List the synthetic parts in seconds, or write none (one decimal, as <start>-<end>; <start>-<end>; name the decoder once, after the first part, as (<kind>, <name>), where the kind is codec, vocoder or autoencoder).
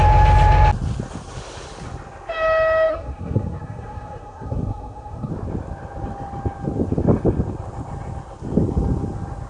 2.9-5.3 (codec, SNAC)